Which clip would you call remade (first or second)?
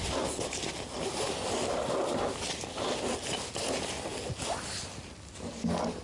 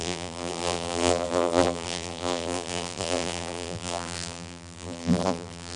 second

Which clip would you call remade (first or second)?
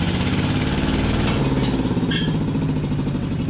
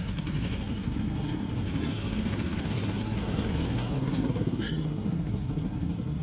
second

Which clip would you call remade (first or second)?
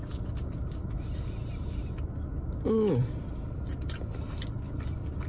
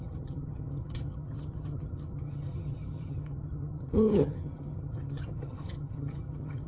second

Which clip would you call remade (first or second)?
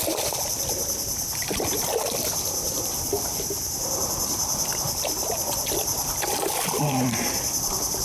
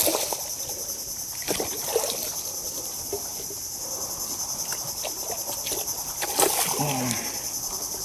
first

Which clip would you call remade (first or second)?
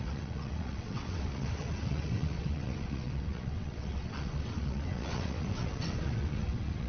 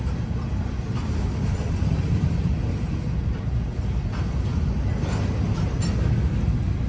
first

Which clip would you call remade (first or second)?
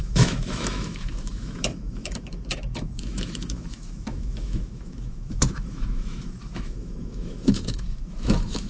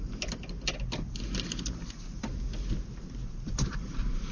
first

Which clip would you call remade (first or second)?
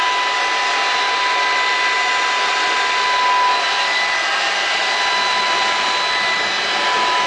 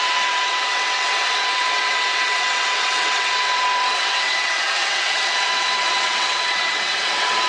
second